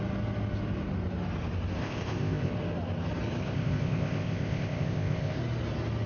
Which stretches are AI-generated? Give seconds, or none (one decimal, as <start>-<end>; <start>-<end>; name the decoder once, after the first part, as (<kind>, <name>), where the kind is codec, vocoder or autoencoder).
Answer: 1.8-2.5 (codec, ZipCodec); 3.4-5.4